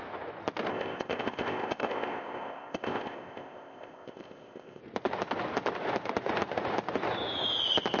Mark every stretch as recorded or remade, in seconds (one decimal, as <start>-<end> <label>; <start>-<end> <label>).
0.0-0.7 recorded; 0.7-4.8 remade; 4.8-8.0 recorded